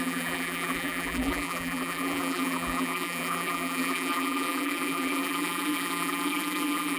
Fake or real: fake